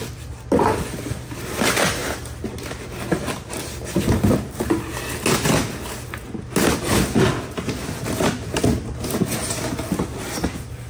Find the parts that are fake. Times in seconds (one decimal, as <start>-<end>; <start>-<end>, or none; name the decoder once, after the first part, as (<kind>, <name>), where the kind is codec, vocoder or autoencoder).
none